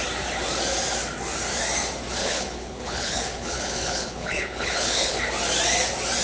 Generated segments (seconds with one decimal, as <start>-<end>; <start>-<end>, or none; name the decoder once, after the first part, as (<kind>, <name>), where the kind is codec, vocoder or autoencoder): 2.2-5.2 (codec, HILCodec)